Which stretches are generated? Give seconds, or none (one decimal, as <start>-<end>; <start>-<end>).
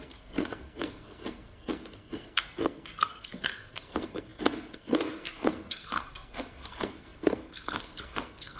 0.0-8.6